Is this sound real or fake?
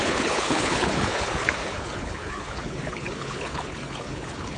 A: fake